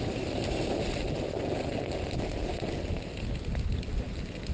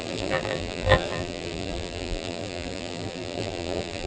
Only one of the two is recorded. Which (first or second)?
first